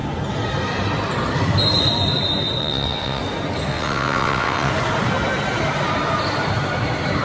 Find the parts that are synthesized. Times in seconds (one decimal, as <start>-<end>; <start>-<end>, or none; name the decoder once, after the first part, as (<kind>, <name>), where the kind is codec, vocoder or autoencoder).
2.6-3.2 (vocoder, WaveNeXt); 3.7-4.7